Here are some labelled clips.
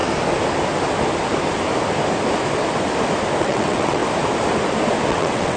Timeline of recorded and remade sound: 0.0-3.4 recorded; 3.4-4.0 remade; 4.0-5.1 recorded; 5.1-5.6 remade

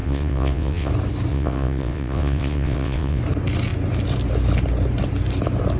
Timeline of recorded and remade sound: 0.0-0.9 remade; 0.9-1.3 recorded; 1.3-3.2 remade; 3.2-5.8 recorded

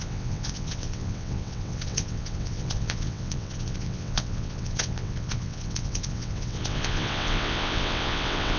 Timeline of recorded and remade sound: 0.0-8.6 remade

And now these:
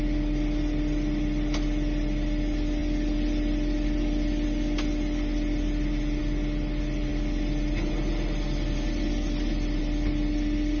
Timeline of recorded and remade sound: 0.0-10.8 recorded

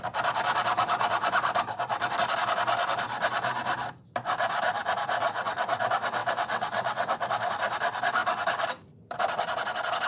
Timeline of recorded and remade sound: 0.0-5.2 recorded; 5.2-5.8 remade; 5.8-6.2 recorded; 6.2-7.5 remade; 7.5-10.1 recorded

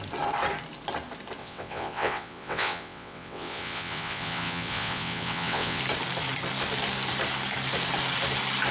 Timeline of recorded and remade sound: 0.0-1.4 recorded; 1.4-5.8 remade; 5.8-8.7 recorded